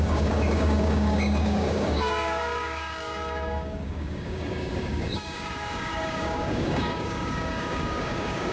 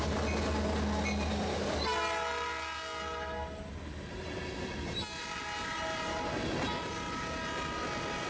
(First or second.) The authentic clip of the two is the second